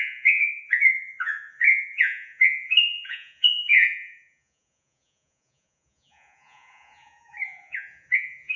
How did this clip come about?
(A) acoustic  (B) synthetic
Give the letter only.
B